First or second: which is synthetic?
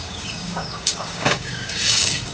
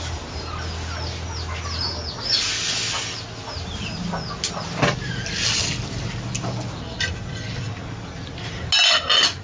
first